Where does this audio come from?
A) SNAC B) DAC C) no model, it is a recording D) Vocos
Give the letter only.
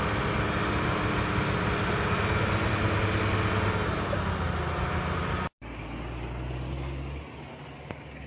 C